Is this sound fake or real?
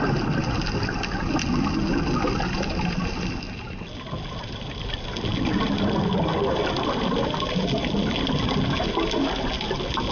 real